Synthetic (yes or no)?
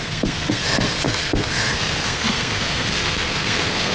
yes